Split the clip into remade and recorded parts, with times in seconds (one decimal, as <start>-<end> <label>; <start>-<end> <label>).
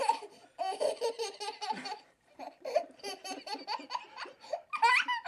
0.0-1.2 recorded; 1.2-4.4 remade; 4.4-5.3 recorded